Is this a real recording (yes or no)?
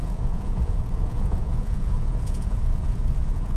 no